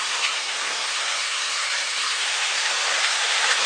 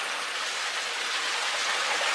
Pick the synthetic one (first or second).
first